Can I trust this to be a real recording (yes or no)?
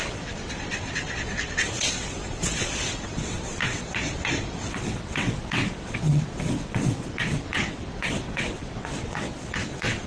no